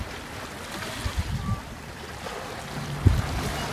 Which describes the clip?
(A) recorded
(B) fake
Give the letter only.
A